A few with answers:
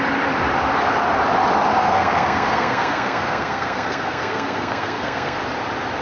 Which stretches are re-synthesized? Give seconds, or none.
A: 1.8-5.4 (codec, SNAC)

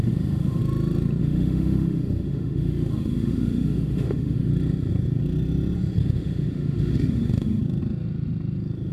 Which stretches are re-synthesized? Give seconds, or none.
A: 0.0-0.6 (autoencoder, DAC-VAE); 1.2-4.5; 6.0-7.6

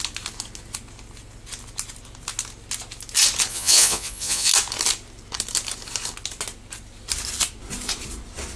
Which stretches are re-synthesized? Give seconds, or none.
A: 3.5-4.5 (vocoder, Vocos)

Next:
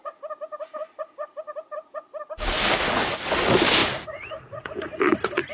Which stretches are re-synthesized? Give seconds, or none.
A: 3.8-5.5 (vocoder, Vocos)

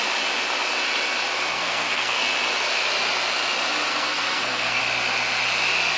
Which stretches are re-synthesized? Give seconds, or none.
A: 1.5-2.2 (codec, SNAC); 3.9-4.8

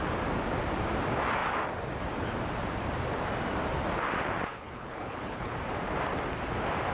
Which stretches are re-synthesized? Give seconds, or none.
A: 4.5-5.6 (codec, HILCodec)

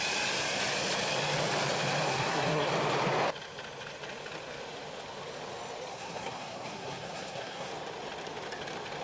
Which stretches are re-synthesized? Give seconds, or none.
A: 2.1-2.7 (codec, SNAC); 5.9-7.7